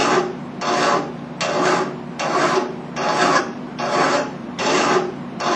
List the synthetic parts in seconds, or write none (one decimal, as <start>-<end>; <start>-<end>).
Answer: 3.4-5.6

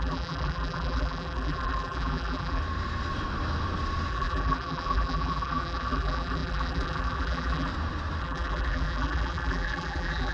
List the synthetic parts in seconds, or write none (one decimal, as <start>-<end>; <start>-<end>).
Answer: 0.0-2.6; 4.1-7.7; 8.2-10.3

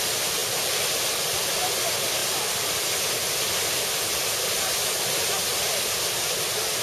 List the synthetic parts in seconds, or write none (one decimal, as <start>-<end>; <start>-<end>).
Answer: none

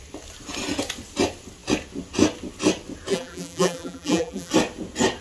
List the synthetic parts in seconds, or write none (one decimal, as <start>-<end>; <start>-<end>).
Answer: 3.1-4.5

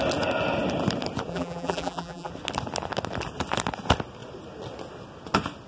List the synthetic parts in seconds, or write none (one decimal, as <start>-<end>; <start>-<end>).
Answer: 1.3-2.3